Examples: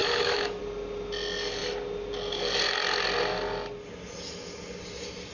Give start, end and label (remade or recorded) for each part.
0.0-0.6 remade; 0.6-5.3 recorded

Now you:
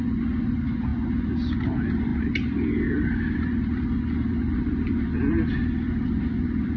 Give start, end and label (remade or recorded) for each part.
0.0-0.9 remade; 0.9-1.6 recorded; 1.6-6.8 remade

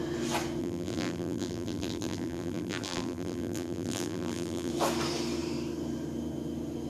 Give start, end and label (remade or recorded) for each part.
0.0-0.6 recorded; 0.6-4.7 remade; 4.7-6.9 recorded

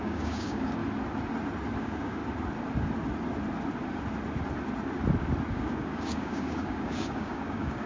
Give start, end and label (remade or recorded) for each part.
0.0-0.8 remade; 0.8-1.8 recorded; 1.8-2.2 remade; 2.2-5.5 recorded; 5.5-7.9 remade

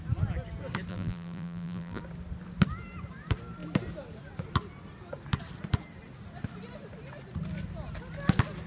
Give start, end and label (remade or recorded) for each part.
0.0-0.9 recorded; 0.9-2.0 remade; 2.0-8.7 recorded

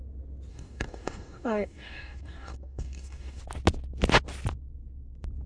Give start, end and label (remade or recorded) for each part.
0.0-0.5 recorded; 0.5-3.4 remade; 3.4-5.5 recorded

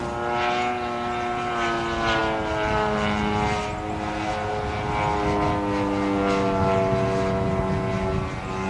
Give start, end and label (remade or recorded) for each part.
0.0-8.7 recorded